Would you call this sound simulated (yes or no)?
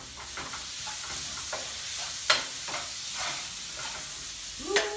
no